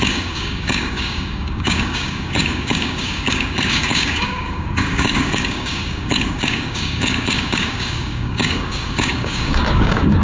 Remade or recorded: remade